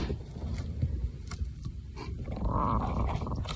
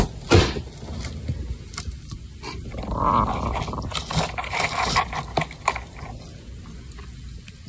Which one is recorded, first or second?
second